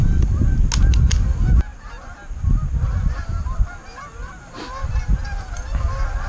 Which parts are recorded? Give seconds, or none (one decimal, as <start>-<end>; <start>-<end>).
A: 0.0-6.3